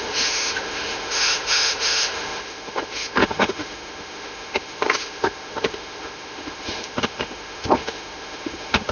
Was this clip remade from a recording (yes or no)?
yes